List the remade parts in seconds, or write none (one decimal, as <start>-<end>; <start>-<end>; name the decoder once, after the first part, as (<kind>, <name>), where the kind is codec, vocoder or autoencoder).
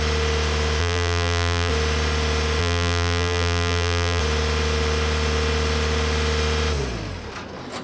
0.8-1.7 (vocoder, BigVGAN v2); 2.6-4.2